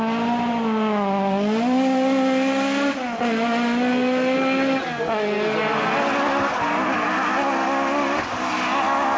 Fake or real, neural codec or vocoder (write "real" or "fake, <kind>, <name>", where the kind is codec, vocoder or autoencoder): real